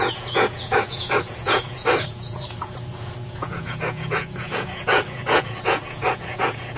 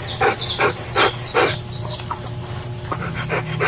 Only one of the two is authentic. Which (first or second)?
second